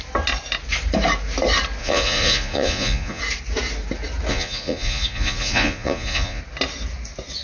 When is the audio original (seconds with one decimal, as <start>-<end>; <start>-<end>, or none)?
0.0-1.8; 3.2-4.3; 6.4-7.4